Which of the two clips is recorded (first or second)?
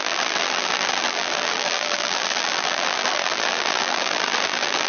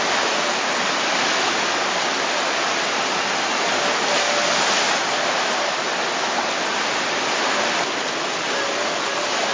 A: second